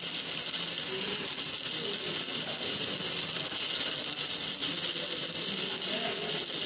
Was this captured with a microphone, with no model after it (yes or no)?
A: yes